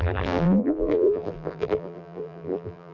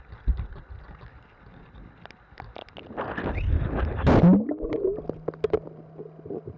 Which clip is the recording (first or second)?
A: second